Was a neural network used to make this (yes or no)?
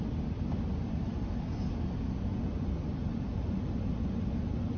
no